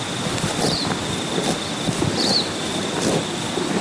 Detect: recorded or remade recorded